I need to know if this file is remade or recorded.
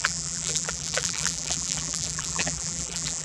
remade